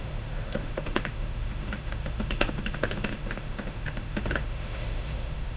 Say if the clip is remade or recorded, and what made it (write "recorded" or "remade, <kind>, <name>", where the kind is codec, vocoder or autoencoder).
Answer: remade, autoencoder, DAC-VAE